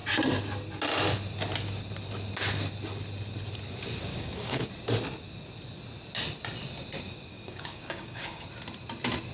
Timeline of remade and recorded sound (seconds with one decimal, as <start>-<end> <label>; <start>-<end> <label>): 0.0-4.1 recorded; 4.1-4.7 remade; 4.7-7.3 recorded; 7.3-8.4 remade; 8.4-9.3 recorded

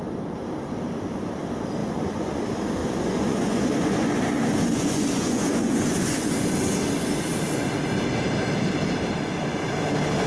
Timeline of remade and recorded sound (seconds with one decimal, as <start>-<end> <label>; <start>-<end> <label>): 0.0-1.8 recorded; 1.8-2.4 remade; 2.4-2.8 recorded; 2.8-6.3 remade; 6.3-10.3 recorded

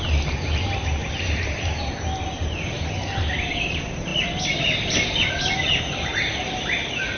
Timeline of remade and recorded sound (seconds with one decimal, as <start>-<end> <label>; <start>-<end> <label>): 0.0-7.2 recorded

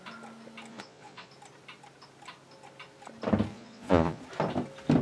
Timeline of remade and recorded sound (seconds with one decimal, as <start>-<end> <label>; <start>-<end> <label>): 0.0-0.7 recorded; 0.7-1.3 remade; 1.3-3.5 recorded; 3.5-4.2 remade; 4.2-5.0 recorded

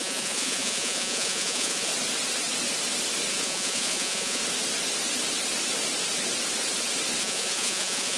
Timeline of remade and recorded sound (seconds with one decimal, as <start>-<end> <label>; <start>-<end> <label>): 0.0-1.9 remade; 1.9-3.3 recorded; 3.3-4.4 remade; 4.4-7.2 recorded; 7.2-8.2 remade